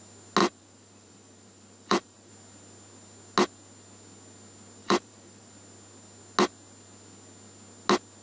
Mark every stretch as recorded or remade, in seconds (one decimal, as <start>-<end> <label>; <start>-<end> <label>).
0.0-0.4 recorded; 0.4-2.3 remade; 2.3-4.8 recorded; 4.8-5.5 remade; 5.5-8.2 recorded